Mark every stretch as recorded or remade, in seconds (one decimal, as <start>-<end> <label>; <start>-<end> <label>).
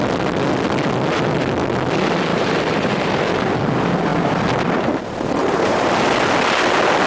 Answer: 0.0-2.3 recorded; 2.3-3.2 remade; 3.2-5.4 recorded; 5.4-5.9 remade; 5.9-7.1 recorded